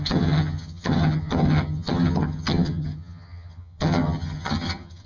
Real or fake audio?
fake